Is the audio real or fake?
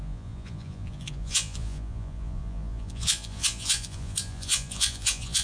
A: fake